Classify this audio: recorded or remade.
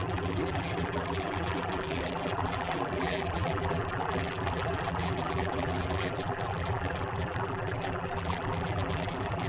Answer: remade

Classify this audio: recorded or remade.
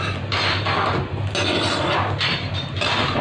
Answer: recorded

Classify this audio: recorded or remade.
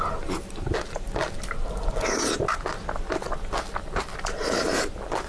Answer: recorded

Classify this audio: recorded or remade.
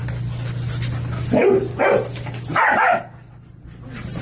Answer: recorded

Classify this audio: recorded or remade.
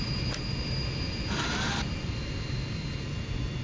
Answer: remade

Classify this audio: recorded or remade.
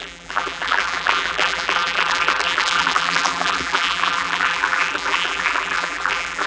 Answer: remade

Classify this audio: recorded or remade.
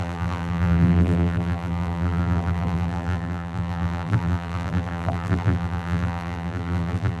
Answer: remade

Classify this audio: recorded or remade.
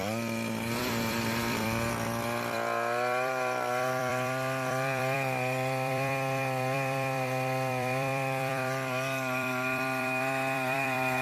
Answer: remade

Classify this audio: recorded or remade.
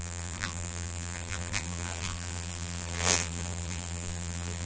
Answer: remade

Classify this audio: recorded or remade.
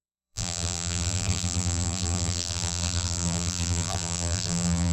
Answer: remade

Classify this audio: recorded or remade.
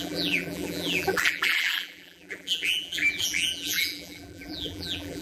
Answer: remade